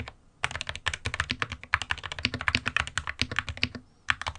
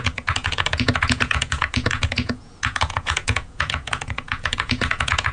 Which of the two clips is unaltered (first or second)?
first